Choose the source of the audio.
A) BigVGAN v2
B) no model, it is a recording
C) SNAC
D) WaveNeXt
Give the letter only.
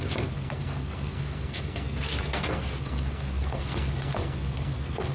C